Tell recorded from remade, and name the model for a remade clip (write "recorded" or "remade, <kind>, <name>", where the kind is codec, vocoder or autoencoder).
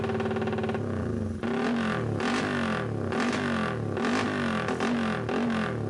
recorded